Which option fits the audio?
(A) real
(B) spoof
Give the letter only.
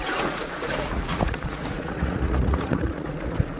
B